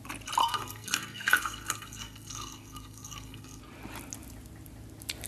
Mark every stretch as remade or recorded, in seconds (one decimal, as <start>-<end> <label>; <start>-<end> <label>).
0.0-0.4 recorded; 0.4-3.6 remade; 3.6-5.3 recorded